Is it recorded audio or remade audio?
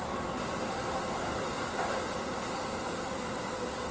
recorded